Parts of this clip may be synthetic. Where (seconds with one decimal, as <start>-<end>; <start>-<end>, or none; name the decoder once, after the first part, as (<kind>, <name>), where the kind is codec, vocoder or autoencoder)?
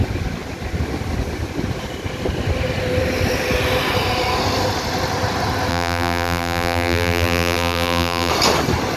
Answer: 5.7-8.3 (vocoder, BigVGAN v2)